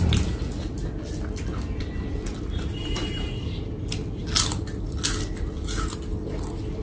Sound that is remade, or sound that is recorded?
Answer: recorded